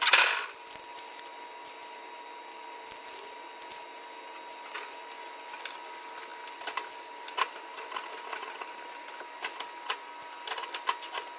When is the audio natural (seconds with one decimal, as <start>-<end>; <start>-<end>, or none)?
0.0-11.4